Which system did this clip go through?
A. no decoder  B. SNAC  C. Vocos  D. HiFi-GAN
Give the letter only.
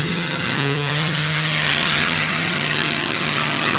D